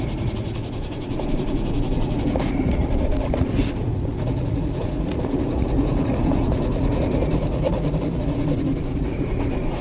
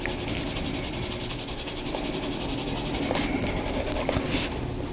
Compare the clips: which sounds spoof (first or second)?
first